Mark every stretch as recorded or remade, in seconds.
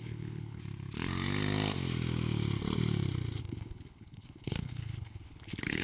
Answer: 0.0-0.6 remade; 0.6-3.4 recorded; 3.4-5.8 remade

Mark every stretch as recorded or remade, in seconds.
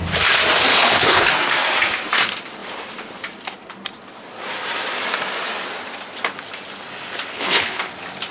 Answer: 0.0-0.7 recorded; 0.7-1.3 remade; 1.3-7.3 recorded; 7.3-7.9 remade; 7.9-8.3 recorded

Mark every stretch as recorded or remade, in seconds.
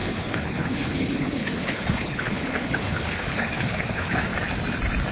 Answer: 0.0-4.3 remade; 4.3-5.1 recorded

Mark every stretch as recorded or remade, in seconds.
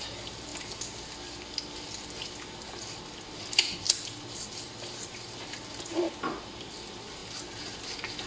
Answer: 0.0-8.3 recorded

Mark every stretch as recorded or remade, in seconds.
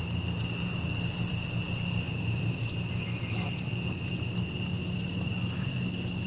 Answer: 0.0-6.3 recorded